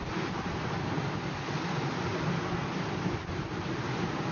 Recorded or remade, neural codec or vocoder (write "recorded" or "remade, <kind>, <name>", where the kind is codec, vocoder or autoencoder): recorded